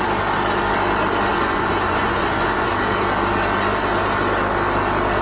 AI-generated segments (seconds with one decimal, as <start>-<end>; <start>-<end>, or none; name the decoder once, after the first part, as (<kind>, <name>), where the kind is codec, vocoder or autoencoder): 1.3-2.7 (vocoder, Vocos)